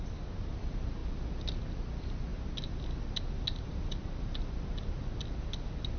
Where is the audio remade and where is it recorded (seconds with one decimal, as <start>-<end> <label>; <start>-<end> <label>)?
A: 0.0-6.0 recorded